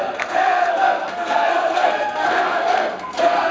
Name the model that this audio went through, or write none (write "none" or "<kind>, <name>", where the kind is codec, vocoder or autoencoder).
codec, SNAC